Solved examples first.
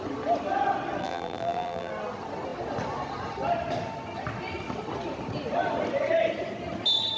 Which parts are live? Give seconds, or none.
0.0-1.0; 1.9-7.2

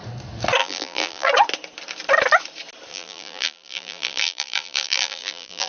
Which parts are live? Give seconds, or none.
0.0-0.6; 1.3-2.9